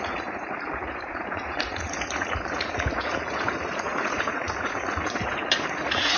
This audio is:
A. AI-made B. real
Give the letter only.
A